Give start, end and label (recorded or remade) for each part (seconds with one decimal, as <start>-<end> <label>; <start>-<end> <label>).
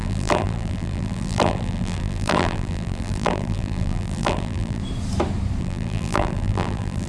0.0-4.8 remade; 4.8-5.6 recorded; 5.6-7.1 remade